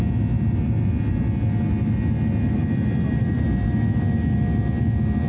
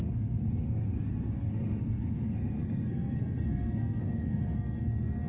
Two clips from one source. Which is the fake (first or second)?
second